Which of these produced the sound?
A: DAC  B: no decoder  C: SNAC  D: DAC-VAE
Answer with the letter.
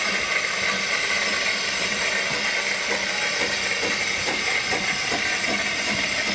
B